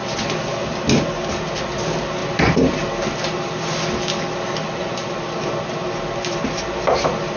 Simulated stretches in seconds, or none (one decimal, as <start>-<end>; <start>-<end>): 2.2-2.9